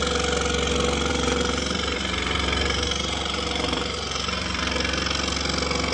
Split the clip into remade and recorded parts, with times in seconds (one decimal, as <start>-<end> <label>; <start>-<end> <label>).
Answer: 0.0-1.1 recorded; 1.1-4.6 remade; 4.6-5.9 recorded